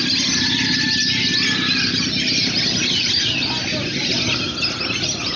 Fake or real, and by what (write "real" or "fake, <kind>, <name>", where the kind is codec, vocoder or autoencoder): real